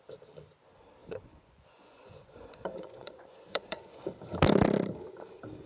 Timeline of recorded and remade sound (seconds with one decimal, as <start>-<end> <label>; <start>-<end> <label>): 0.0-1.0 recorded; 1.0-4.0 remade; 4.0-5.7 recorded